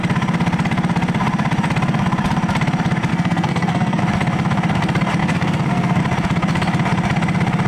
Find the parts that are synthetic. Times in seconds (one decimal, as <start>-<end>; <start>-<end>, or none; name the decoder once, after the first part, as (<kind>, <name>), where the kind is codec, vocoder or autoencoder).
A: 3.1-4.0 (codec, SNAC); 5.2-6.0